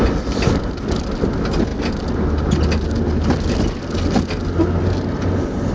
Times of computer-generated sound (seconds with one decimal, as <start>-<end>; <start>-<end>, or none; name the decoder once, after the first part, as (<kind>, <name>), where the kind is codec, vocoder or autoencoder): none